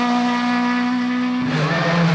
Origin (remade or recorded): recorded